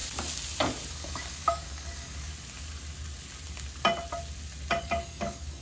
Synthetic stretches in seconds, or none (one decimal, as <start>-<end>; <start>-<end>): 0.9-2.3; 4.8-5.6